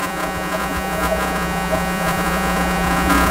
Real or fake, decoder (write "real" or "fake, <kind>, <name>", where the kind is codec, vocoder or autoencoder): fake, vocoder, Vocos